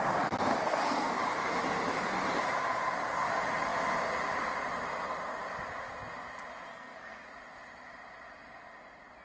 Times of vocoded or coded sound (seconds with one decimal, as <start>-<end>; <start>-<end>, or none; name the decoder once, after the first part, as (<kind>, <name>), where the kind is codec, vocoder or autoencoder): 0.5-1.2 (codec, SNAC); 6.7-7.2